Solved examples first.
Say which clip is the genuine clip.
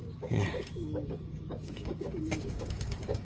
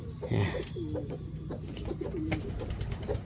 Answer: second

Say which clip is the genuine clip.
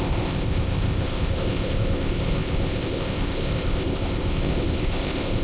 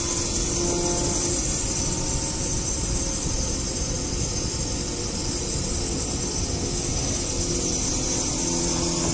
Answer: second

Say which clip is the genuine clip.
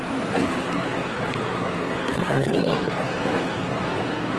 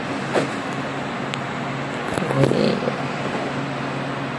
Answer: second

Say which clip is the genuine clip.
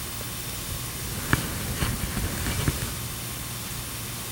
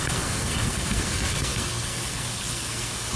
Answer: first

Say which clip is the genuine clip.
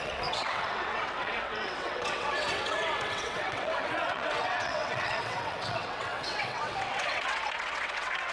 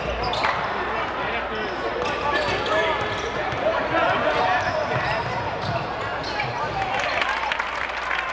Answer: second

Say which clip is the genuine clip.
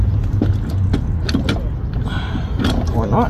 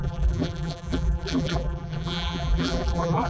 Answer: first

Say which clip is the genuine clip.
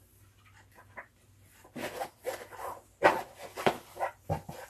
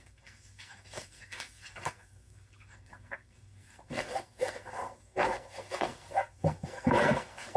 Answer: first